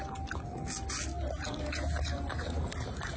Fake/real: real